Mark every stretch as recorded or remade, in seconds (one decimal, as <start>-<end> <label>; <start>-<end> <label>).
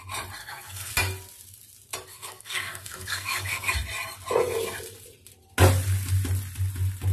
0.0-0.4 recorded; 0.4-0.9 remade; 0.9-2.1 recorded; 2.1-3.7 remade; 3.7-7.1 recorded